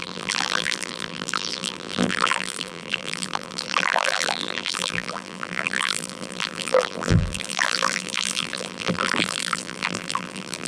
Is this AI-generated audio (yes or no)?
yes